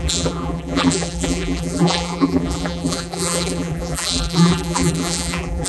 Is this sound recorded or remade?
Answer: remade